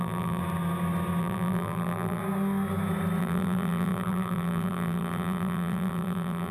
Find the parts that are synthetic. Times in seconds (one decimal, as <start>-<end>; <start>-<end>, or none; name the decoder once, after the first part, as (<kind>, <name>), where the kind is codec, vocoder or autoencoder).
0.0-0.4 (vocoder, BigVGAN v2); 1.2-2.2; 3.2-6.5